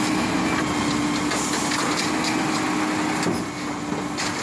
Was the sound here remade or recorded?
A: recorded